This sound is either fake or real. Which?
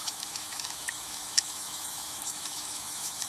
fake